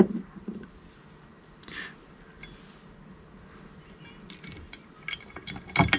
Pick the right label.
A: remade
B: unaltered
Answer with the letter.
B